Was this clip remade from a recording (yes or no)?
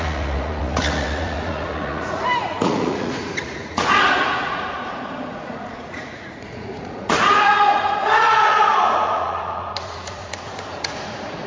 yes